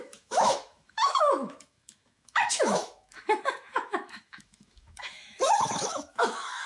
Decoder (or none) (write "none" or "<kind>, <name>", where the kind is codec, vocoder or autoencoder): autoencoder, DAC-VAE